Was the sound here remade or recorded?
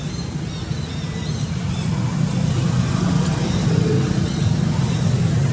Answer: recorded